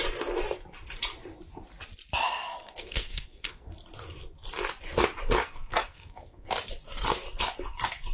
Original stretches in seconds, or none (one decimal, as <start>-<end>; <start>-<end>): 0.0-2.2; 3.7-5.4; 6.5-8.1